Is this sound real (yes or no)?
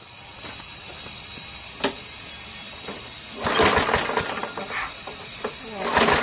yes